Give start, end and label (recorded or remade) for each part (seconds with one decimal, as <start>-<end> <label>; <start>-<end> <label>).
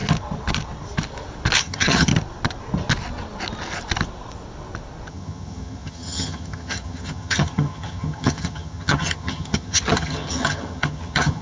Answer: 0.0-1.6 recorded; 1.6-2.1 remade; 2.1-5.1 recorded; 5.1-11.4 remade